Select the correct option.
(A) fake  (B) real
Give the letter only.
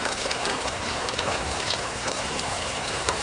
A